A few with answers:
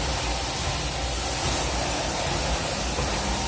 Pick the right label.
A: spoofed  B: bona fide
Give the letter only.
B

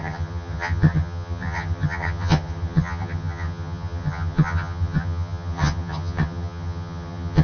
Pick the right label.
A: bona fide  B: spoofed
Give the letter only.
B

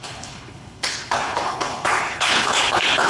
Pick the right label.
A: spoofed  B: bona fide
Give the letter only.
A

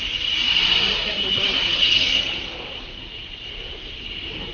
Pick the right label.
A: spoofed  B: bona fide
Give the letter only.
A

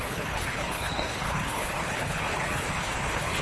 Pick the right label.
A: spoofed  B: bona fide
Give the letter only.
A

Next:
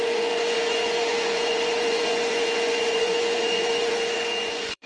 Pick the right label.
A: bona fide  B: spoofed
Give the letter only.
B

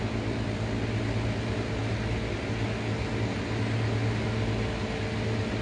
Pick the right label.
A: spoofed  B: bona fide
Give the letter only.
B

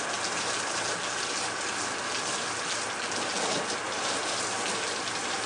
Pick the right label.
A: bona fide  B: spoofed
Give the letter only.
A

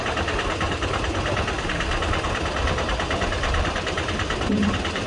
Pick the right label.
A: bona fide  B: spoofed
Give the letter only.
A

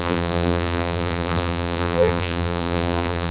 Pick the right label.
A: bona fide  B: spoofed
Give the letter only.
B